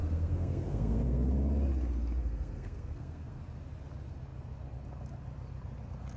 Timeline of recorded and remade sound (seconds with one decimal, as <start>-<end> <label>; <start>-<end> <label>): 0.0-1.3 remade; 1.3-2.2 recorded; 2.2-3.4 remade; 3.4-6.2 recorded